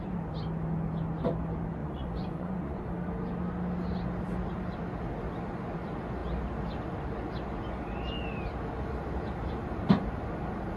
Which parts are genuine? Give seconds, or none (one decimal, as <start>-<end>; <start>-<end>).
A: 0.0-1.8; 2.8-10.8